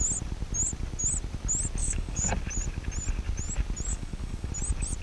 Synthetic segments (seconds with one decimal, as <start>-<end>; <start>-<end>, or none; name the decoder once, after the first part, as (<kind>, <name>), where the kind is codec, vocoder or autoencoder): 1.8-2.3 (codec, DAC); 3.9-4.5